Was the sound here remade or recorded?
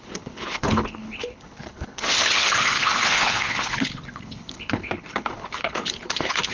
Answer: remade